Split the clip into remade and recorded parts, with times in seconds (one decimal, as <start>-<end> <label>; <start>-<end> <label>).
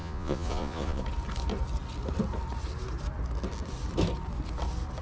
0.0-1.0 remade; 1.0-5.0 recorded